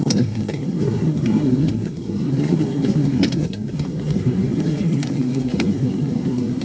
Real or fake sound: fake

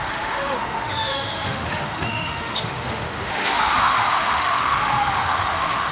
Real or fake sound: fake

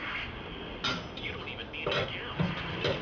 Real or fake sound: real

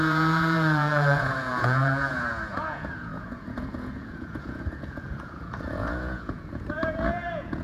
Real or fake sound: fake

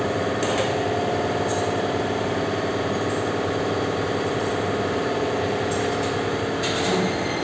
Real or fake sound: real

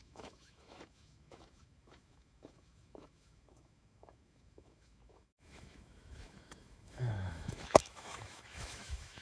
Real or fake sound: fake